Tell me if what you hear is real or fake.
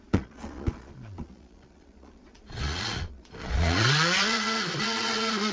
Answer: fake